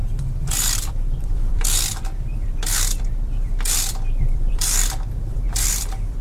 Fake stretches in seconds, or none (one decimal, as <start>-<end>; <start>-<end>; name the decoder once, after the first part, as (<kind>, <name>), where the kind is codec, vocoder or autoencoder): 0.9-6.2 (vocoder, BigVGAN v2)